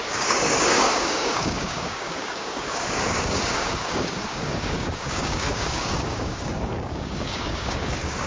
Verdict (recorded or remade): remade